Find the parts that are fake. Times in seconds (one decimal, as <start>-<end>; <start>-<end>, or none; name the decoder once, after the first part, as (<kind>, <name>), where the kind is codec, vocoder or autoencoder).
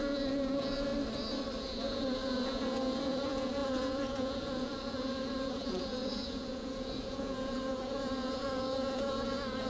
0.0-0.9 (vocoder, Vocos); 1.6-9.7